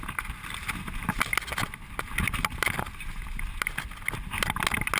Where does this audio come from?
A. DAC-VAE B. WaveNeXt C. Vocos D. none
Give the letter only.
D